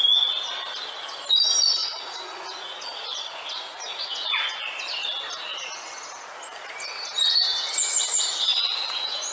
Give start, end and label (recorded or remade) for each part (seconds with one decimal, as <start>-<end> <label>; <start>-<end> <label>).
0.0-1.8 recorded; 1.8-4.5 remade; 4.5-8.5 recorded; 8.5-9.3 remade